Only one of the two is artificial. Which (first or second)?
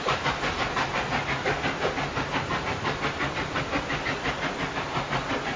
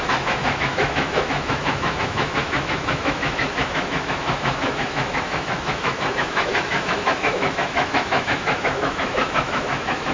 second